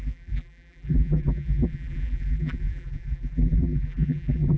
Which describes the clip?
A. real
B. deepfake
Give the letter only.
B